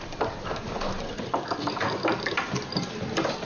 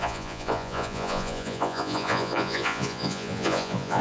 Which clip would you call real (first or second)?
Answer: first